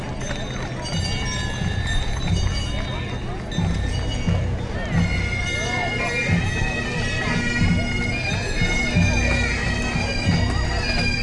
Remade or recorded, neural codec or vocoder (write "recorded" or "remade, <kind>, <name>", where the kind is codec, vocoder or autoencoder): recorded